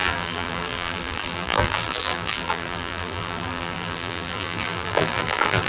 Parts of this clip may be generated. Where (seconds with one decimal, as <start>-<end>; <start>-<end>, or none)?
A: 0.0-5.7